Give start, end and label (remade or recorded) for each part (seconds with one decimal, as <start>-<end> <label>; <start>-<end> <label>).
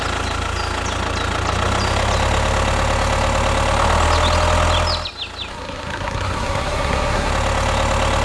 0.0-5.5 recorded; 5.5-7.3 remade; 7.3-8.2 recorded